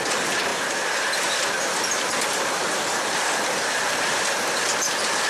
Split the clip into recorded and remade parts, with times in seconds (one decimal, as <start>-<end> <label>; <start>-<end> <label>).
0.0-5.3 recorded